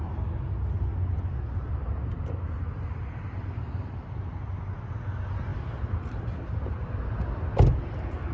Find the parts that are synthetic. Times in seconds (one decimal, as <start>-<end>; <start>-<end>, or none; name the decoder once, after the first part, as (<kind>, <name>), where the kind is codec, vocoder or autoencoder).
none